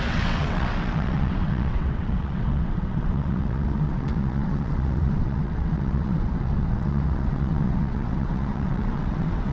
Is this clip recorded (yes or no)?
no